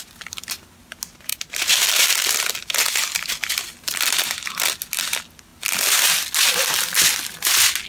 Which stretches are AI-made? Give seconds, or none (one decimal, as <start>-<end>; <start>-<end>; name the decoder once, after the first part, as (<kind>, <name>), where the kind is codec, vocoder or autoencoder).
none